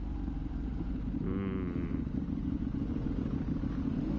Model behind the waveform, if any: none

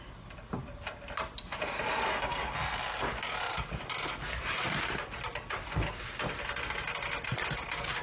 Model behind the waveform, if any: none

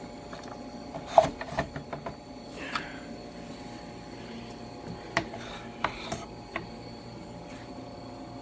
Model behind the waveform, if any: none